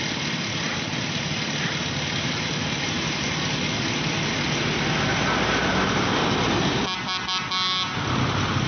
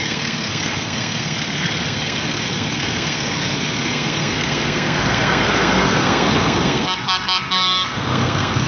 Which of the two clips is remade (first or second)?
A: second